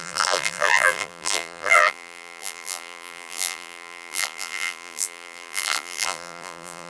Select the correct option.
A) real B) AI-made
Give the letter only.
B